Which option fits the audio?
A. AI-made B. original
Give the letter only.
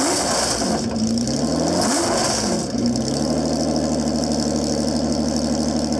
B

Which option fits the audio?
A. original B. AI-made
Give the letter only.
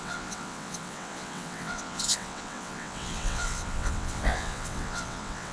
B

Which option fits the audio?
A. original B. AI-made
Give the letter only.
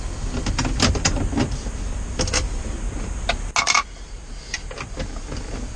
A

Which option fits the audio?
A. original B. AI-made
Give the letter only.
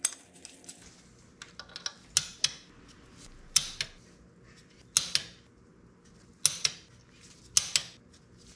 A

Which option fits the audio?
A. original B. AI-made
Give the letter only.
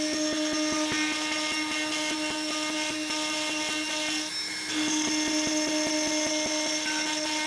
A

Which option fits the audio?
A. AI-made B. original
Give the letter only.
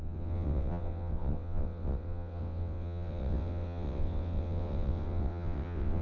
A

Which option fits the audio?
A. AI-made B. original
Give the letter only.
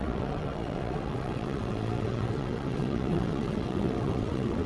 A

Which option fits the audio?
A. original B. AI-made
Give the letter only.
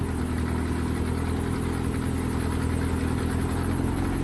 A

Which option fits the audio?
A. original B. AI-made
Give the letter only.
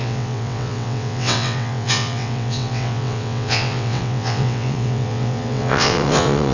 B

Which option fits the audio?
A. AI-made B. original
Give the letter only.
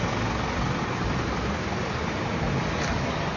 B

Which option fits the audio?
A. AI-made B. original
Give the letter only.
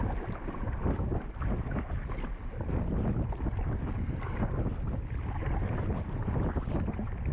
B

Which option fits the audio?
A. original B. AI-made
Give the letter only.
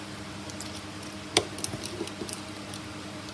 A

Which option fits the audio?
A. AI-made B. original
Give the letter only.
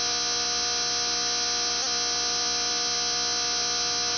B